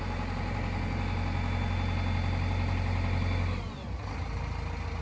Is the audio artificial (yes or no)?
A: no